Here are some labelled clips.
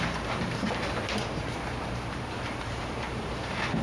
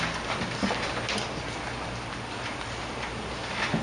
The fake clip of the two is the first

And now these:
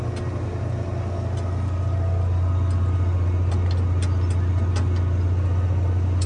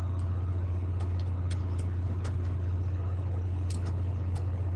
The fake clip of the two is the second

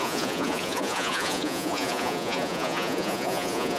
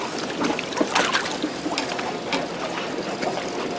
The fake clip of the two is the first